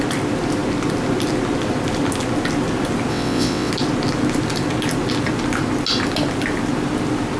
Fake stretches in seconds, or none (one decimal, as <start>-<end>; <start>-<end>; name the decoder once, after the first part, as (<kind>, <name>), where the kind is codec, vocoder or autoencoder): 3.1-3.7 (vocoder, WaveNeXt)